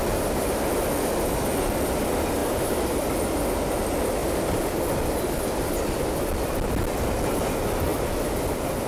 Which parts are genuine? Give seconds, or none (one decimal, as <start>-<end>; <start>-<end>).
0.0-2.4; 3.0-4.2; 7.1-8.9